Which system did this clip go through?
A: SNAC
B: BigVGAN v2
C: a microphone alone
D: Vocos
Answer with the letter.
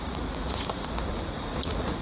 D